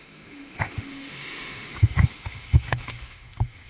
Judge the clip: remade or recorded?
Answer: remade